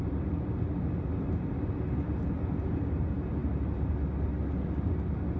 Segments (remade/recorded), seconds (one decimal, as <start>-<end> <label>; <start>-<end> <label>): 0.0-5.4 recorded